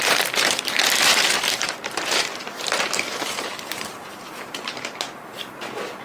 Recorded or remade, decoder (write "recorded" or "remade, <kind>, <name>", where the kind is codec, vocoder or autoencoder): remade, vocoder, BigVGAN v2